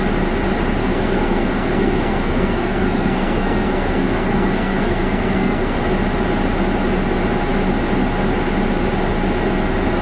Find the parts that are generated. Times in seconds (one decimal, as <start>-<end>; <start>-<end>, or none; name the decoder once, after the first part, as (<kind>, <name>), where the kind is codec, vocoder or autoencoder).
0.8-5.8 (codec, SNAC)